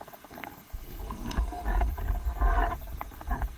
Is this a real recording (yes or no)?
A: no